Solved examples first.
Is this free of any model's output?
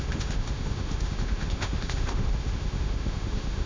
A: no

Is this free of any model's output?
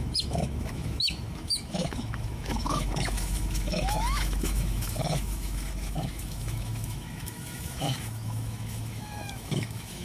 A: no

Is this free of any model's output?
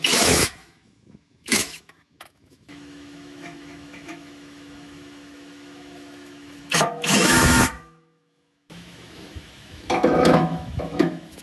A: no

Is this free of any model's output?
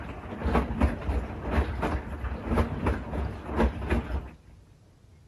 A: yes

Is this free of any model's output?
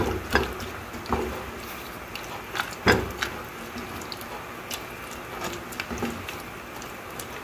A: yes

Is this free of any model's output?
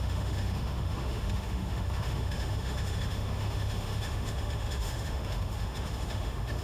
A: no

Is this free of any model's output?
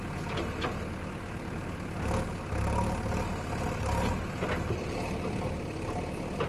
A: yes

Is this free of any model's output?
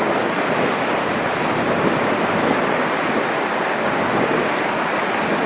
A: yes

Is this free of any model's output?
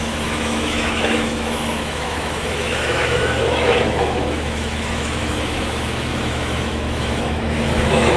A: no